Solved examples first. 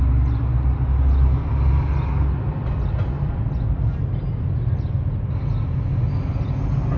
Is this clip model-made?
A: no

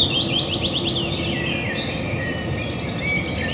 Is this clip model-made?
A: no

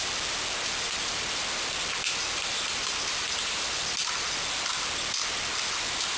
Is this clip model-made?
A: yes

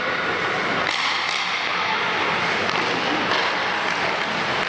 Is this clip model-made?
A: no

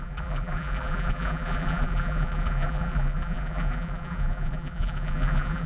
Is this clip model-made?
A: yes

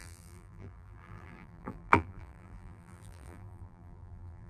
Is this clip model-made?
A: yes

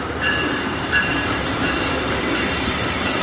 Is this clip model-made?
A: yes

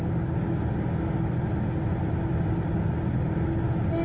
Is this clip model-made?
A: no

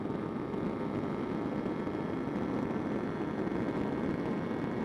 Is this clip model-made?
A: no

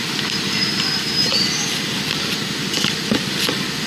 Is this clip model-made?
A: no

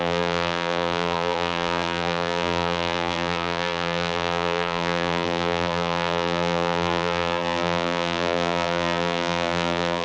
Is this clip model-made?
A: yes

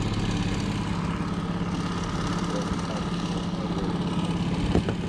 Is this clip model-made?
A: no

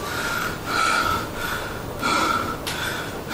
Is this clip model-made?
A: no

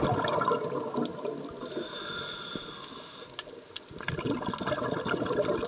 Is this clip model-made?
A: no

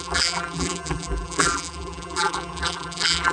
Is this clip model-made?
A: yes